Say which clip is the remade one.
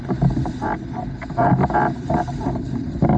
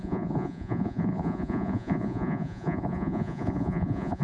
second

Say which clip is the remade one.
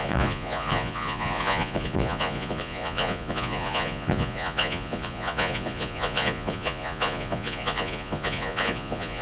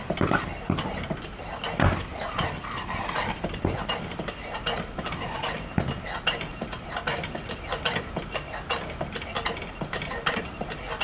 first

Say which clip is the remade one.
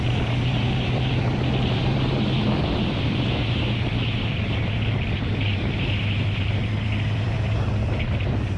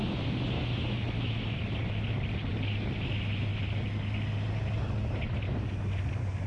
first